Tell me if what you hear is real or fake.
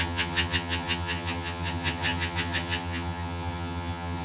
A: fake